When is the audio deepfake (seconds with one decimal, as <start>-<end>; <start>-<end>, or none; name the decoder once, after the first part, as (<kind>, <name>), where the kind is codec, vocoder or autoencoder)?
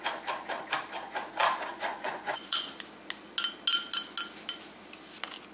1.7-2.7 (vocoder, Vocos)